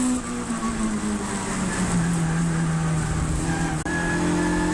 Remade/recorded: recorded